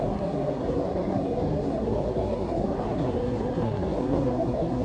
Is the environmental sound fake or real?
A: fake